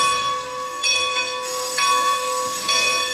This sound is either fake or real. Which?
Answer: fake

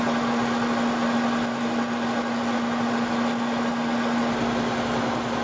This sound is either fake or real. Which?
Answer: real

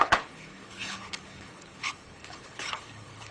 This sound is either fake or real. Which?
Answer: fake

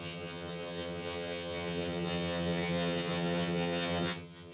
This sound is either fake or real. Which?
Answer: fake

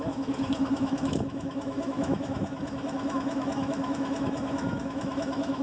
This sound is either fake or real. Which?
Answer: fake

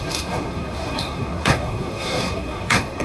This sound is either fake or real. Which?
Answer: fake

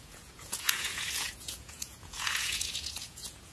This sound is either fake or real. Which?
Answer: fake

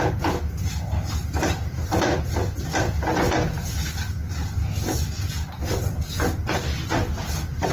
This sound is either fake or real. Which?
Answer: real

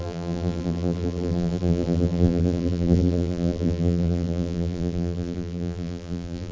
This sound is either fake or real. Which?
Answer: fake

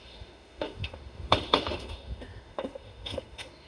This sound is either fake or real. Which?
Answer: fake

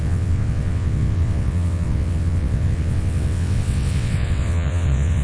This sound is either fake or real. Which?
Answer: fake